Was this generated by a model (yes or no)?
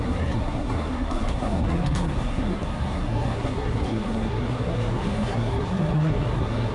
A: yes